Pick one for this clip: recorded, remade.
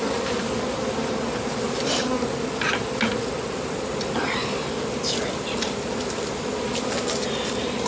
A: recorded